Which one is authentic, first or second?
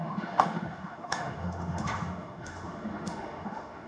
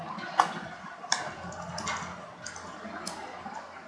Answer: second